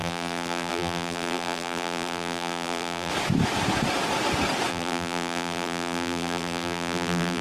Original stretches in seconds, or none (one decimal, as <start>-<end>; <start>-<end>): 3.1-4.7